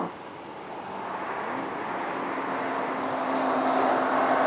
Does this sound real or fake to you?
real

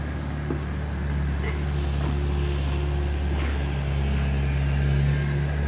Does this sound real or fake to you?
real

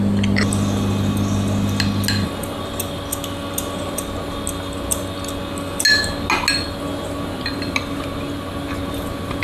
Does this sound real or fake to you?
real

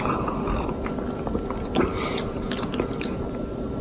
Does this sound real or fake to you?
real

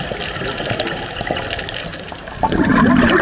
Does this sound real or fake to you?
real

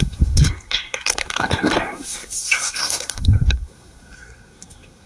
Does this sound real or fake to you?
fake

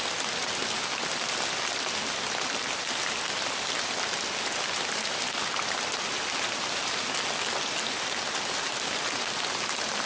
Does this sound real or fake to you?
real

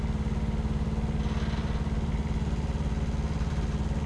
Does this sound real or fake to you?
real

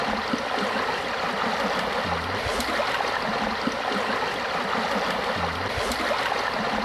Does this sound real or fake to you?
real